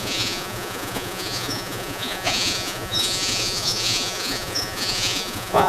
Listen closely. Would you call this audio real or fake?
fake